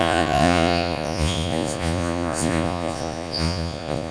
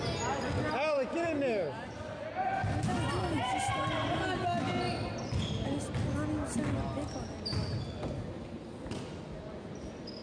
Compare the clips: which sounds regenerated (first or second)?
first